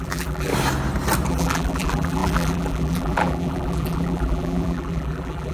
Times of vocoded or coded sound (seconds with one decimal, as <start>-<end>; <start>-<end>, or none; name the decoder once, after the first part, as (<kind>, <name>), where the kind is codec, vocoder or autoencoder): 0.0-0.5 (vocoder, BigVGAN v2); 1.3-5.5

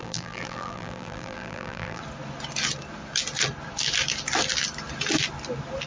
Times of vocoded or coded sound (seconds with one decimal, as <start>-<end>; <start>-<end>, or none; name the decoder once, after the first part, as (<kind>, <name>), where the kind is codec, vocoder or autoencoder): 0.0-2.0 (vocoder, BigVGAN v2)

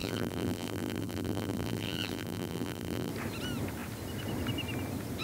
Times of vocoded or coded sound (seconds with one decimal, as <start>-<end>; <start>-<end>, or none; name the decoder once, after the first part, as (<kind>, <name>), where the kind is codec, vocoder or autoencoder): 0.0-3.1 (vocoder, BigVGAN v2)